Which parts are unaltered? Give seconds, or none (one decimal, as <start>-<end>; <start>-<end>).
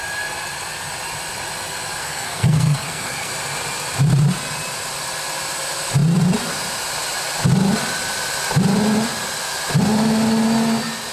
0.0-2.0; 3.3-11.1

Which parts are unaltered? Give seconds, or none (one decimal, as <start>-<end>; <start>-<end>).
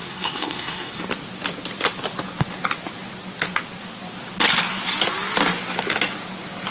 1.0-6.7